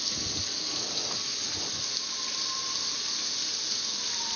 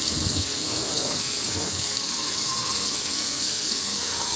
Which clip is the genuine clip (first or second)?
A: first